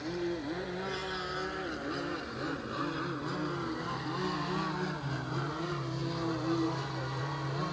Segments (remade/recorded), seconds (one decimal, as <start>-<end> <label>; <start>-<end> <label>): 0.0-7.7 recorded